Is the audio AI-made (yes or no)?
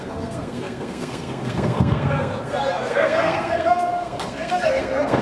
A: yes